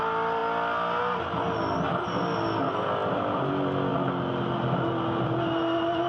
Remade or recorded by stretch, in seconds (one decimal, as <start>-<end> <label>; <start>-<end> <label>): 0.0-3.0 recorded; 3.0-3.5 remade; 3.5-3.9 recorded; 3.9-4.7 remade; 4.7-6.1 recorded